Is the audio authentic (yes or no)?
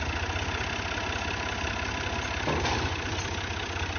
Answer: yes